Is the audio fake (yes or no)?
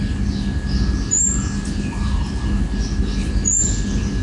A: no